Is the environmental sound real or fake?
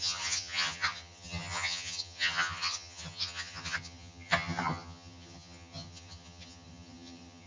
fake